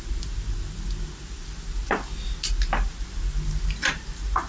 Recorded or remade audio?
recorded